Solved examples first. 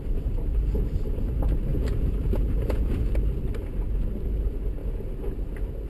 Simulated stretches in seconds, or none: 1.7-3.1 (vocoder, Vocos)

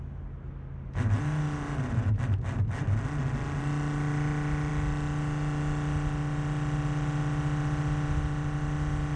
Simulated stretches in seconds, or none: none

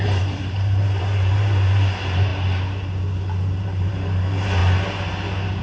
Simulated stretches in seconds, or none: 0.0-4.6 (vocoder, BigVGAN v2)

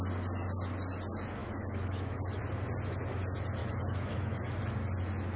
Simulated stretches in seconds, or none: 1.4-2.4 (autoencoder, DAC-VAE); 3.6-4.6

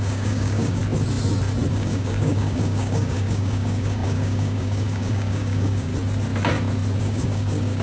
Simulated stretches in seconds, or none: 0.0-0.8 (codec, DAC); 1.7-5.9; 7.0-7.8

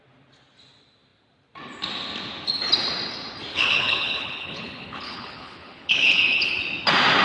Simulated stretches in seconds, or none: 3.5-6.5 (codec, HILCodec)

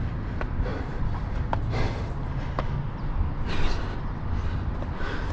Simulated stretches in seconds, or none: none

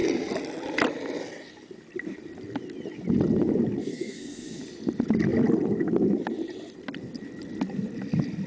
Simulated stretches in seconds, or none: 3.9-4.6 (codec, SNAC)